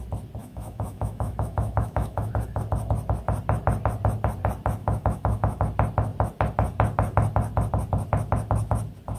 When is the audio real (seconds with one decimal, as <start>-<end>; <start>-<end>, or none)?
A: 0.0-0.4; 2.3-4.8; 5.6-9.2